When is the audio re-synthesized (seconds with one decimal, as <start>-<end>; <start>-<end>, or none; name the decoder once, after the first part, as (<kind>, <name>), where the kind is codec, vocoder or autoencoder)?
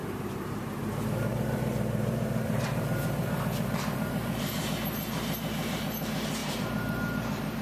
0.0-0.6 (vocoder, BigVGAN v2); 1.3-5.8; 6.4-7.6